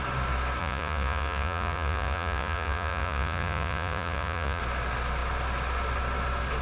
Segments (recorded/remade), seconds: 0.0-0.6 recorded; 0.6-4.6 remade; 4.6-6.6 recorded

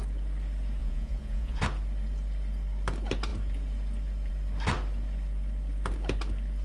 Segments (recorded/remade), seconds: 0.0-0.8 recorded; 0.8-1.6 remade; 1.6-6.6 recorded

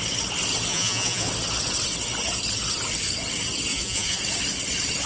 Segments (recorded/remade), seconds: 0.0-0.7 recorded; 0.7-1.3 remade; 1.3-3.7 recorded; 3.7-4.2 remade; 4.2-5.1 recorded